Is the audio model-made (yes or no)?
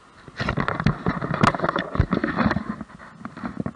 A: no